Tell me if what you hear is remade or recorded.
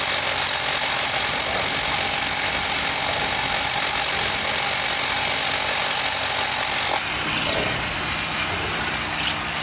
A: recorded